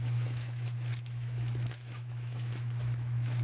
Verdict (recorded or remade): remade